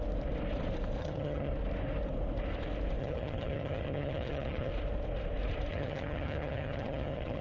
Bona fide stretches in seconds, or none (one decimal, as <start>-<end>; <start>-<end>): 0.0-1.0; 1.5-3.0; 4.7-5.7